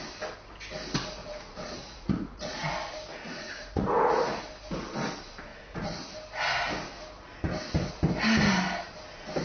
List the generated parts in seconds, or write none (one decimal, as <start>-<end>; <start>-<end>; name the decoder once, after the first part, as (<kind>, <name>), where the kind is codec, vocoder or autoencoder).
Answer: 1.2-2.7 (vocoder, Vocos); 3.1-4.1; 5.5-6.1